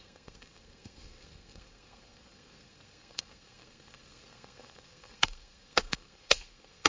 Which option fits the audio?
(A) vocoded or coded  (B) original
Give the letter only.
A